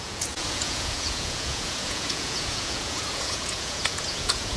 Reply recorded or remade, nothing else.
remade